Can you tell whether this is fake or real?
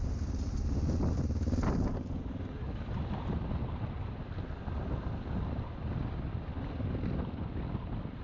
real